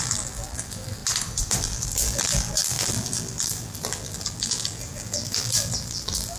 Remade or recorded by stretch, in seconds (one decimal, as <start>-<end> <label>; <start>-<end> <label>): 0.0-1.0 remade; 1.0-1.6 recorded; 1.6-6.4 remade